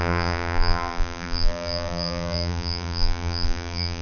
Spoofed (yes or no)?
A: yes